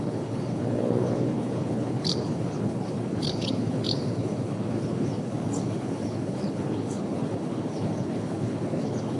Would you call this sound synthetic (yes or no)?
yes